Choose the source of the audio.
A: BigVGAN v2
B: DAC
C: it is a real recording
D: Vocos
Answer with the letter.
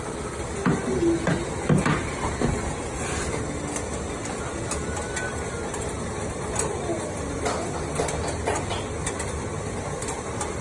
C